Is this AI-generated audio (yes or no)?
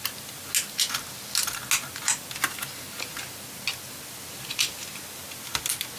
no